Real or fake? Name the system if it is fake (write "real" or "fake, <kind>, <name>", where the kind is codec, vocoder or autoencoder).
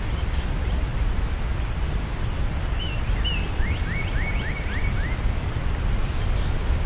real